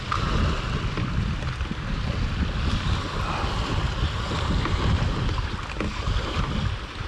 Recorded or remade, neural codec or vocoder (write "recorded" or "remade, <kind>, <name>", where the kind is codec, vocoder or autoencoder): recorded